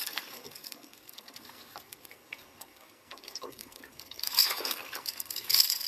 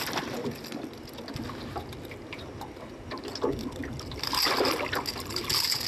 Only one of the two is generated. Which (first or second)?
first